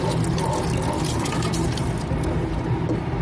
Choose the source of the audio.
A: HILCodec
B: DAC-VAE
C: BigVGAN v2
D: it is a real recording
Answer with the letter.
D